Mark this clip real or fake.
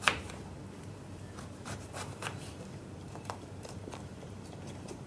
fake